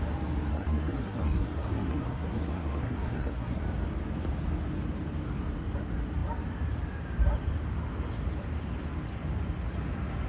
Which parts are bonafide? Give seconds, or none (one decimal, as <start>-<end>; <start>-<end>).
0.0-0.5; 3.6-10.3